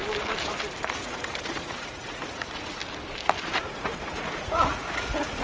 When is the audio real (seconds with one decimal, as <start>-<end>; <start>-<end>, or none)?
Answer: 0.0-1.0; 2.8-3.6